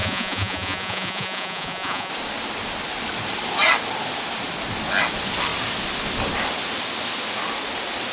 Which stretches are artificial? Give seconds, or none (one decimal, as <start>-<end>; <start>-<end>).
0.0-2.1